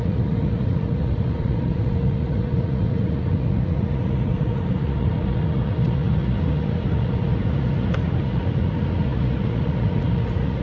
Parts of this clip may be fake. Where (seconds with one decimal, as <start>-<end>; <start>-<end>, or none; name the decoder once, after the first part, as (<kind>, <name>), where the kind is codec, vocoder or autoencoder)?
0.0-10.6 (vocoder, Vocos)